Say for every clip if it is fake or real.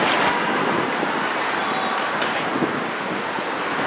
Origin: real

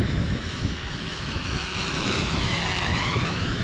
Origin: fake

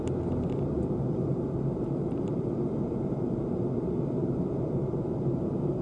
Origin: real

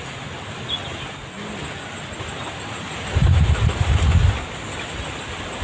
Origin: real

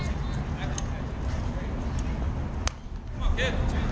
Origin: real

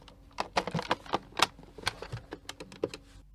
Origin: real